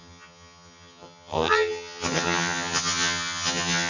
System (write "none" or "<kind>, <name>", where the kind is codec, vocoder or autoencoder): vocoder, HiFi-GAN